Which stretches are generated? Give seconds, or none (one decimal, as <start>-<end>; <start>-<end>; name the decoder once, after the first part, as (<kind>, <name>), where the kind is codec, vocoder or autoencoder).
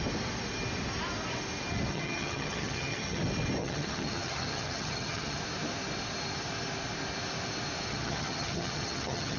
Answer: 1.9-3.2 (vocoder, HiFi-GAN); 3.6-5.4; 7.9-9.4